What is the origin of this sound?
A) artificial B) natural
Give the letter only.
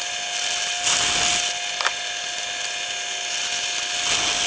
B